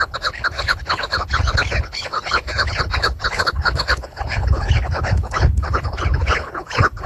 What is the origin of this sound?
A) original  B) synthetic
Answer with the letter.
B